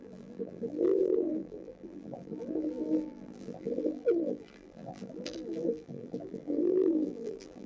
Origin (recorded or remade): remade